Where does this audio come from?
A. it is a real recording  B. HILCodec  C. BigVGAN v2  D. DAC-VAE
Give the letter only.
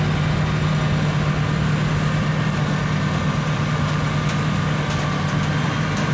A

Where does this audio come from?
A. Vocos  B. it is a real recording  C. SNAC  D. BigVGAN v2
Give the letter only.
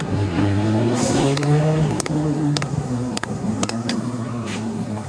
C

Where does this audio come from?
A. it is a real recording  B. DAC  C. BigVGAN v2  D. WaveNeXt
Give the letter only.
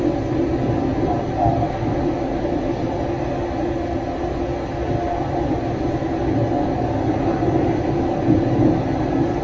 A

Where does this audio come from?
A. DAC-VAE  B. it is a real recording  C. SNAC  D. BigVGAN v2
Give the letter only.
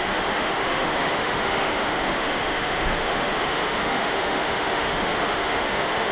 A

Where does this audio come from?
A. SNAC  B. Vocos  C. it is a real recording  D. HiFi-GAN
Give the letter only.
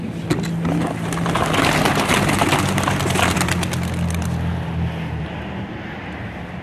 C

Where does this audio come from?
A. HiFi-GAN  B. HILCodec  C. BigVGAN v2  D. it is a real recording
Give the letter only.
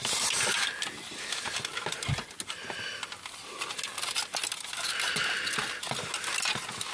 D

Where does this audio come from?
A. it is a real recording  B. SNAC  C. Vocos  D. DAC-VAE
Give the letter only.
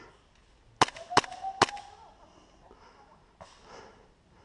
A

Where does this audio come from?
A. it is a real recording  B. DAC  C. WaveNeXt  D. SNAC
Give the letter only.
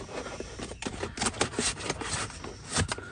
A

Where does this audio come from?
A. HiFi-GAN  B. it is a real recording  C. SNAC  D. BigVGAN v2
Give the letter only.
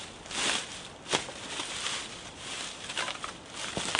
B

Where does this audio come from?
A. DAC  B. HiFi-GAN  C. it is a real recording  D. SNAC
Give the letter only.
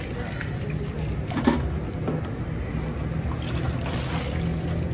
C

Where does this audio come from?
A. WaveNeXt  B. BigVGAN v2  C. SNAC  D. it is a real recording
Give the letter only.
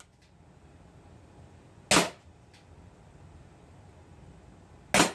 D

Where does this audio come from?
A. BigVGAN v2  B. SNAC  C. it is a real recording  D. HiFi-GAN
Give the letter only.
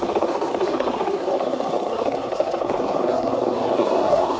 B